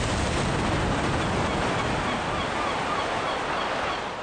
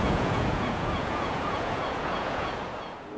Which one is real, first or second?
first